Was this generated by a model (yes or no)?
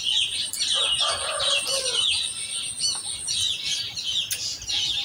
no